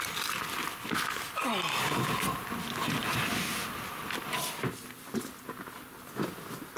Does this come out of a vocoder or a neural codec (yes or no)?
no